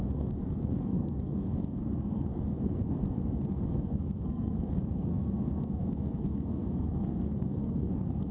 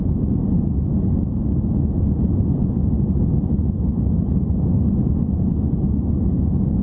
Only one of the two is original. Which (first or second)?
second